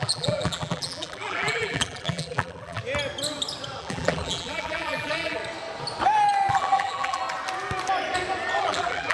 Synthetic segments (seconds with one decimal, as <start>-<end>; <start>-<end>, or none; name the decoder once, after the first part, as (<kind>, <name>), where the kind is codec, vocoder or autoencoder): 0.0-2.8 (vocoder, BigVGAN v2); 3.8-5.4; 6.5-7.2; 8.6-9.1